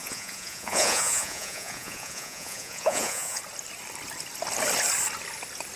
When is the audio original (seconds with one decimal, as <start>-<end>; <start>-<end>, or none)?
3.4-5.8